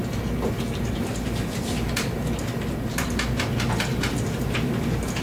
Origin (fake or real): real